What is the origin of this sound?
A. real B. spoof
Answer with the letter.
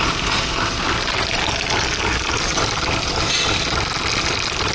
A